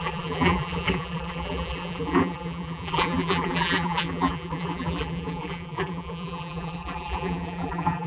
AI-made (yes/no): yes